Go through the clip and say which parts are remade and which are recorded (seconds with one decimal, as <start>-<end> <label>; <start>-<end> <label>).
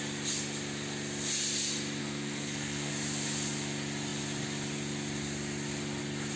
0.0-2.0 recorded; 2.0-2.9 remade; 2.9-6.4 recorded